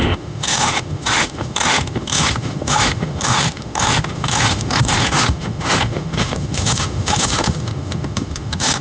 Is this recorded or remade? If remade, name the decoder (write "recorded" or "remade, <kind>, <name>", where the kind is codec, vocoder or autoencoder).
remade, autoencoder, DAC-VAE